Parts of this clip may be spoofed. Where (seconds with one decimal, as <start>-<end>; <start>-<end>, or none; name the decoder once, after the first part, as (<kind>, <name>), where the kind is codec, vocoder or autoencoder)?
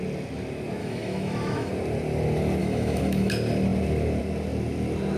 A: 0.8-1.7 (autoencoder, DAC-VAE); 2.6-3.3